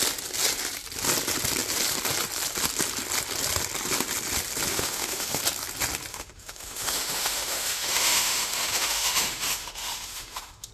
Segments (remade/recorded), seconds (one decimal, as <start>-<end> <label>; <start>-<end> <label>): 0.0-4.7 recorded; 4.7-5.4 remade; 5.4-6.1 recorded; 6.1-10.7 remade